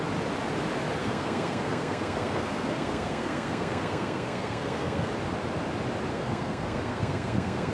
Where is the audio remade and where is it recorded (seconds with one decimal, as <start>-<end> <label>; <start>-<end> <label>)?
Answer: 0.0-1.0 recorded; 1.0-5.1 remade; 5.1-6.1 recorded; 6.1-7.7 remade